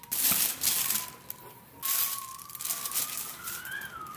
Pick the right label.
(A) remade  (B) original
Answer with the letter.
B